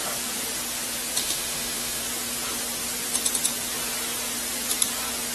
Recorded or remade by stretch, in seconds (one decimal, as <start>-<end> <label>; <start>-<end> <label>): 0.0-1.2 recorded; 1.2-2.0 remade; 2.0-5.3 recorded